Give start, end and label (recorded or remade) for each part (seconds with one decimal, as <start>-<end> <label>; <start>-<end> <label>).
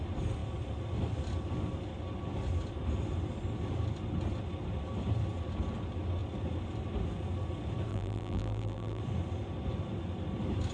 0.0-7.9 recorded; 7.9-9.0 remade; 9.0-10.7 recorded